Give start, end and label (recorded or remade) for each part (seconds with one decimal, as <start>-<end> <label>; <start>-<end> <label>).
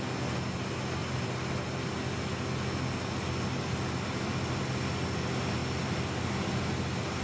0.0-7.2 recorded